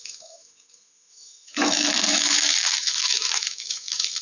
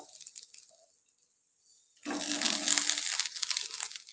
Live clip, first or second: second